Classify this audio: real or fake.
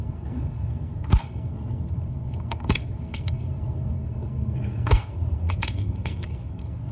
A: fake